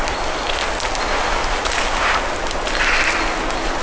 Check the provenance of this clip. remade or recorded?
recorded